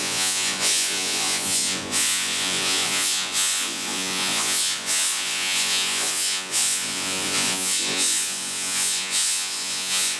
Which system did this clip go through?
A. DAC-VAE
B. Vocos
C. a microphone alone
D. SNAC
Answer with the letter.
B